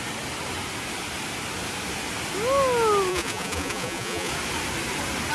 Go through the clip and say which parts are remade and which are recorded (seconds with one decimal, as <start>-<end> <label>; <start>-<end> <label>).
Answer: 0.0-3.1 recorded; 3.1-4.3 remade; 4.3-5.3 recorded